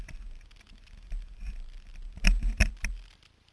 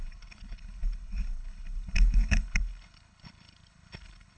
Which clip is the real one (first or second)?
first